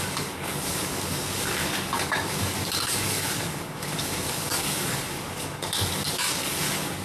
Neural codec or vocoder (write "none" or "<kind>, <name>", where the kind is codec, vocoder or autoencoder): codec, DAC